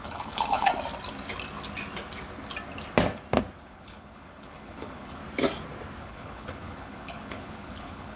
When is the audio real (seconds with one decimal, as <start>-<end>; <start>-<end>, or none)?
0.7-3.6; 5.2-6.0